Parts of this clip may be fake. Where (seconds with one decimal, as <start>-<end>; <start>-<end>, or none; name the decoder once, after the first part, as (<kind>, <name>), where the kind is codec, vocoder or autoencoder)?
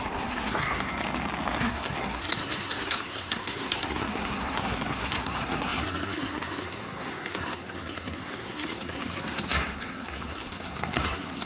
0.0-0.9 (codec, SNAC); 1.6-11.5